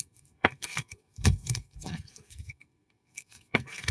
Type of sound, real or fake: fake